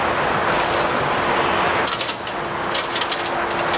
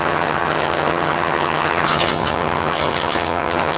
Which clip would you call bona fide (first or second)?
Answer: first